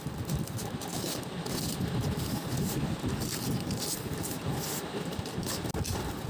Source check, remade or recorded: recorded